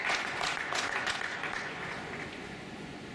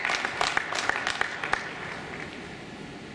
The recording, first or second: second